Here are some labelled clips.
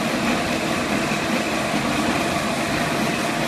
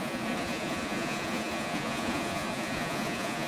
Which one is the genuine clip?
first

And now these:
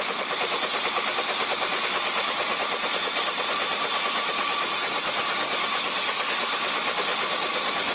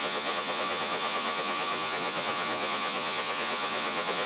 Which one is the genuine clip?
first